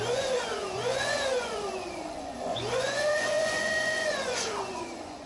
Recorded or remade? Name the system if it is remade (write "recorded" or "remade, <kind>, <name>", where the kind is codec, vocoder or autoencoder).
remade, vocoder, Vocos